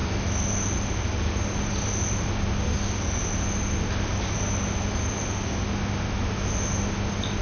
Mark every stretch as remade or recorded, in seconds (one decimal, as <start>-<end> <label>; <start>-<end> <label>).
0.0-7.4 recorded